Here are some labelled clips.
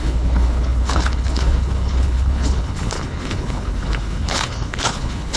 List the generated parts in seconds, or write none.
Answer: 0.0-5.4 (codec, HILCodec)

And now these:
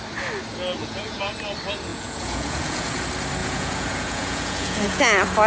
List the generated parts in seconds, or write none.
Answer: 0.8-1.3 (vocoder, Vocos); 1.9-3.0; 3.4-5.0